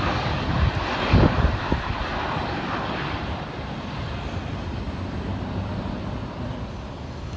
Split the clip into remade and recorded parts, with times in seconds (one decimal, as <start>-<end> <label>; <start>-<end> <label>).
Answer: 0.0-7.4 recorded